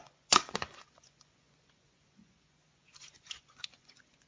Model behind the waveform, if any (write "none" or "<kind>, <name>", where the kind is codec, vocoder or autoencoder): vocoder, Vocos